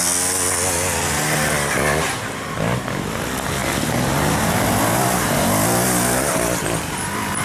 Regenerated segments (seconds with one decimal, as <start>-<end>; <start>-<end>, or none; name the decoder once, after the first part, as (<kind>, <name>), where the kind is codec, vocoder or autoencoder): none